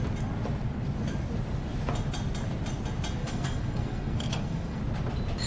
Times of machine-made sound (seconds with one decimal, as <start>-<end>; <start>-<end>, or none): 3.2-4.8